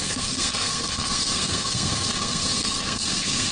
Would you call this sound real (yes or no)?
no